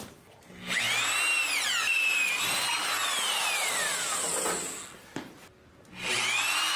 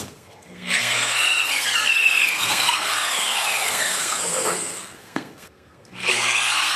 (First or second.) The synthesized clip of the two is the second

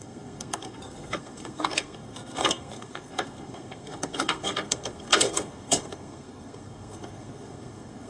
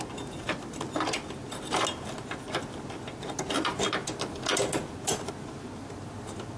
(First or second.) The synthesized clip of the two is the first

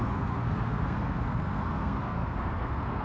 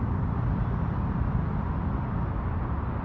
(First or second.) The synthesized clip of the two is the first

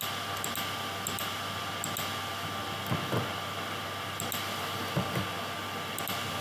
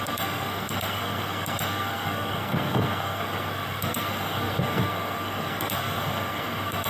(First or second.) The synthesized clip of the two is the second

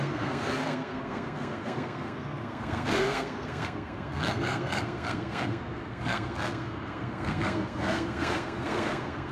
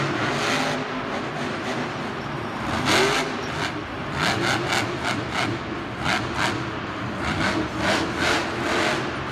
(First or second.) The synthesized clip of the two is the first